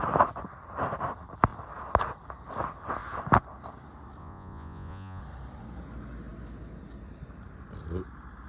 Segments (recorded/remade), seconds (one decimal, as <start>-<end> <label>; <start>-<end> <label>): 0.0-4.2 recorded; 4.2-5.2 remade; 5.2-8.5 recorded